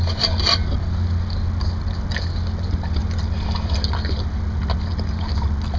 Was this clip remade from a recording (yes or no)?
no